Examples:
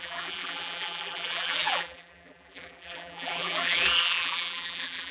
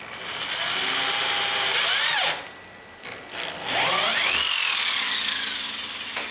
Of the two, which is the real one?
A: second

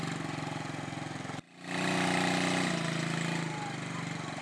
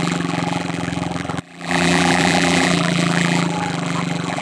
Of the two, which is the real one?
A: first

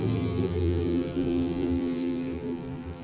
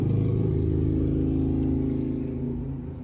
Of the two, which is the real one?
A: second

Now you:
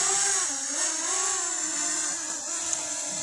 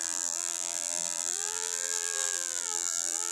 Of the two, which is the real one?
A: first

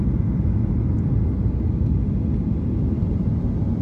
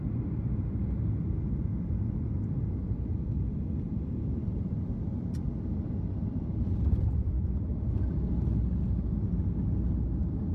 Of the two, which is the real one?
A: first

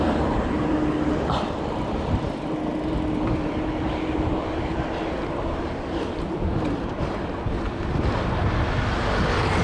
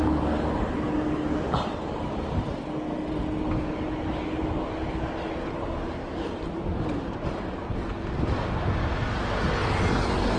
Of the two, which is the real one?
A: second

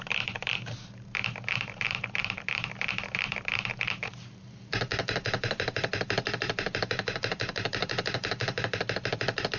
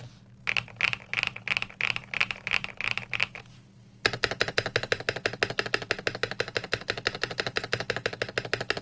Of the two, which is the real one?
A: second